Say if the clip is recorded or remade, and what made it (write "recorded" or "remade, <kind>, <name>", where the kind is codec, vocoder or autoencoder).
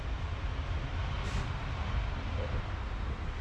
recorded